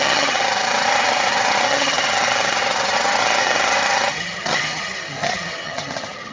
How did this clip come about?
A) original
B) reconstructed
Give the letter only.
B